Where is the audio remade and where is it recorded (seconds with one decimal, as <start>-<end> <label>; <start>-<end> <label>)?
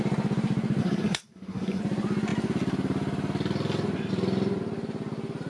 0.0-0.8 recorded; 0.8-1.8 remade; 1.8-5.5 recorded